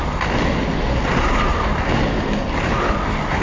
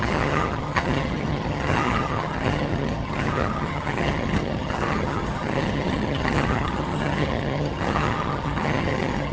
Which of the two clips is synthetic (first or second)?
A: second